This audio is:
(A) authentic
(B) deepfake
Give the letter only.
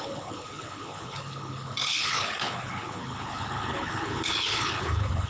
B